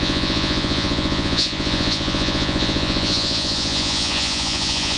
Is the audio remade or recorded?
remade